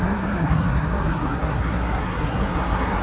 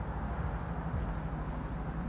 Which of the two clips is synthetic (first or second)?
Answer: first